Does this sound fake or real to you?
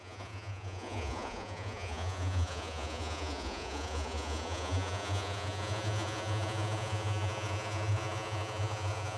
fake